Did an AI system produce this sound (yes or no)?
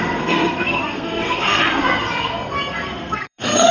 yes